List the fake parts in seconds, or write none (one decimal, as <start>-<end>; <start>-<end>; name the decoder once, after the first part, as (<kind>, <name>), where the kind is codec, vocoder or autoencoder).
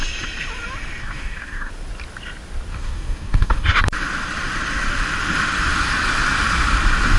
1.0-1.7 (codec, DAC); 2.7-3.8